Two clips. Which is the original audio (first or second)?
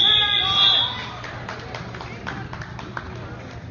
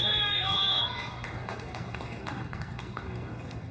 first